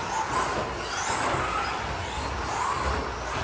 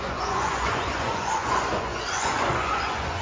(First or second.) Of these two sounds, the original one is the first